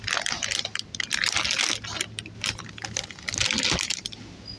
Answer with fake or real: real